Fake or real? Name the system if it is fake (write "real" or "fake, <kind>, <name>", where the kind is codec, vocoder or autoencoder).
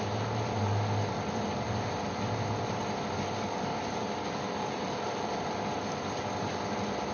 real